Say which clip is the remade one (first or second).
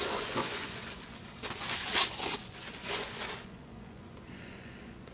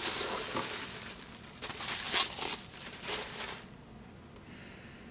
first